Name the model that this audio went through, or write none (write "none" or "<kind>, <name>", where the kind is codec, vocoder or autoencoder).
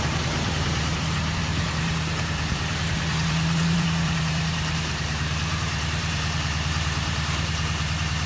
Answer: vocoder, BigVGAN v2